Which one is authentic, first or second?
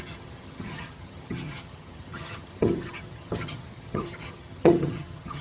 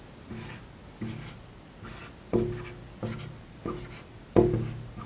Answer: second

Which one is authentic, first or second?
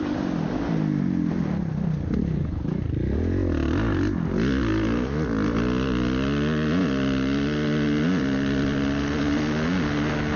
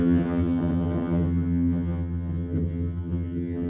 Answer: first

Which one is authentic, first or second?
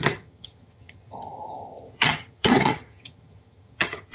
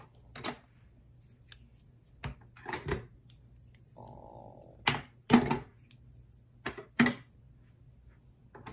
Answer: second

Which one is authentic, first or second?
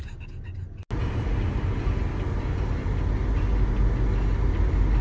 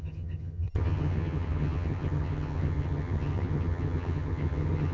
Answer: first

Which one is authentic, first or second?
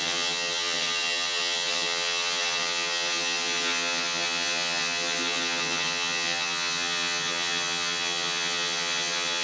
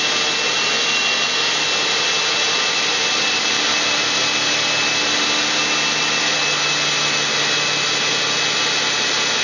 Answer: second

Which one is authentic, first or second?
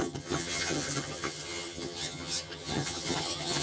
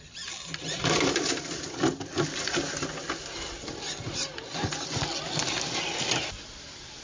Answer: second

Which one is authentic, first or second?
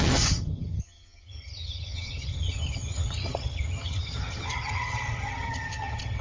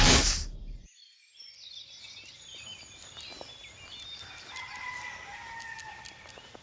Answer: second